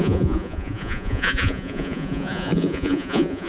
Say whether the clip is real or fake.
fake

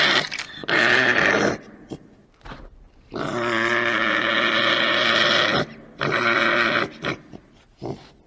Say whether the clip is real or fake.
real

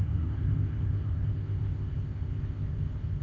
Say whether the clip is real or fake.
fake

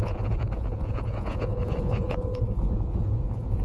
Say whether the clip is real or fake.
fake